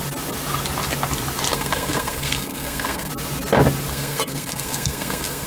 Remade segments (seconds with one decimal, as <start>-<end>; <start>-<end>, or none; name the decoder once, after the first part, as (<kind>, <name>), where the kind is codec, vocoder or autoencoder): 1.5-3.1 (codec, SNAC); 3.9-5.5